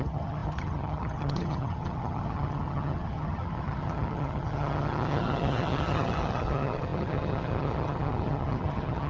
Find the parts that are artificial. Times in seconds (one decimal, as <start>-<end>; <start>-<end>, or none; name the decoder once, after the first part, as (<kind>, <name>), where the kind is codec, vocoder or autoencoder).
0.0-9.1 (vocoder, HiFi-GAN)